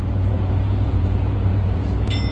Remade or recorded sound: remade